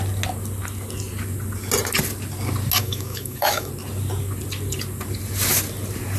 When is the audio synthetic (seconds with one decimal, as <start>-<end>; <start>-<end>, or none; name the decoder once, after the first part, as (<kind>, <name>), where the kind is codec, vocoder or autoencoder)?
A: 2.8-3.7 (autoencoder, DAC-VAE)